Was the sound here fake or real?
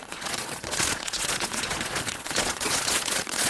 fake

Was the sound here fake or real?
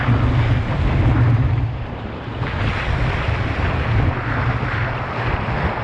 real